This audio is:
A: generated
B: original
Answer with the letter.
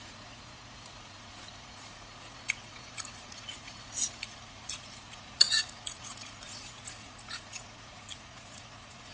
A